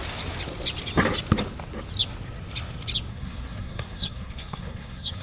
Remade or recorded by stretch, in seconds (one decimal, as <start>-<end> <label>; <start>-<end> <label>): 0.0-3.1 recorded; 3.1-5.2 remade